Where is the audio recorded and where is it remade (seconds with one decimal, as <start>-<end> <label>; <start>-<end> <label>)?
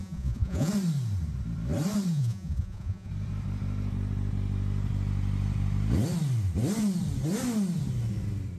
0.0-0.7 remade; 0.7-2.1 recorded; 2.1-3.1 remade; 3.1-8.6 recorded